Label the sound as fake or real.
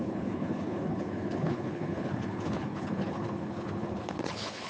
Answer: fake